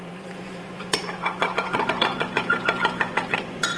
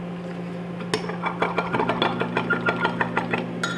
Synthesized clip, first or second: first